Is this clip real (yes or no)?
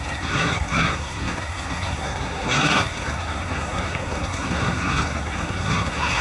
no